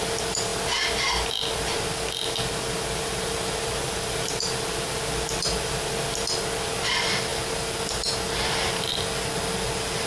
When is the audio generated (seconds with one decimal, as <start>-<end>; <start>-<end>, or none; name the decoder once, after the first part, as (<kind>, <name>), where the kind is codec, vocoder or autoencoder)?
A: none